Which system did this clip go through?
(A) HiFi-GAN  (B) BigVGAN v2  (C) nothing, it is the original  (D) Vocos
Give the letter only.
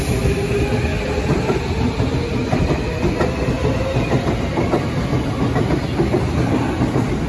C